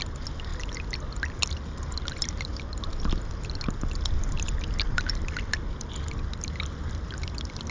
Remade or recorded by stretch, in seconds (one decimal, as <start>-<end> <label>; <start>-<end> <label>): 0.0-7.7 recorded